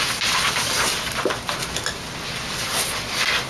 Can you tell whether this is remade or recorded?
recorded